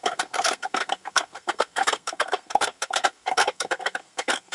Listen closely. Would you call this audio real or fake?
fake